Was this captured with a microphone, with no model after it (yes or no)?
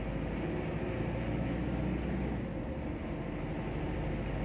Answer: yes